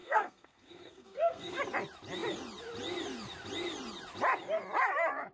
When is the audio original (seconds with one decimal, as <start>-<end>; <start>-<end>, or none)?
1.6-5.3